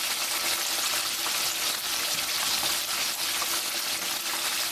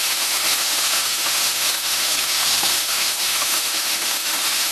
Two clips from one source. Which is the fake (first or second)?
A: second